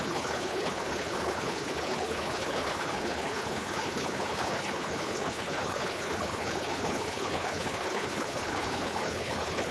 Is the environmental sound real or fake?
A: fake